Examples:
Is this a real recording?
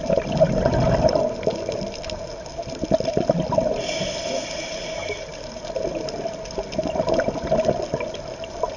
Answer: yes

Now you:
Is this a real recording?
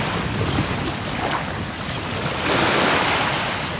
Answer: yes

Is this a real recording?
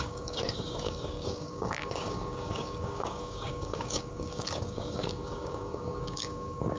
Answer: no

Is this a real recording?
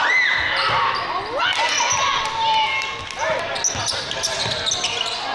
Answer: yes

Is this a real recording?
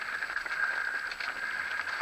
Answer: yes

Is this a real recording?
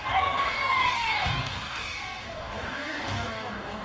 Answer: no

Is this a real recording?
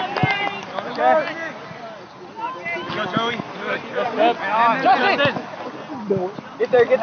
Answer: yes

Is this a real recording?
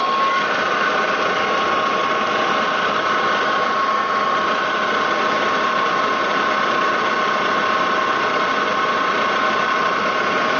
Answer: yes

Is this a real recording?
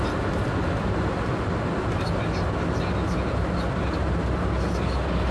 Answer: yes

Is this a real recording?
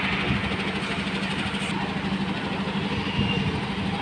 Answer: yes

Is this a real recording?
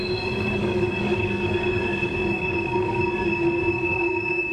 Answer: no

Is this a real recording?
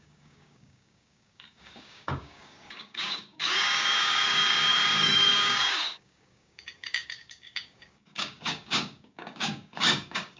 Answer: no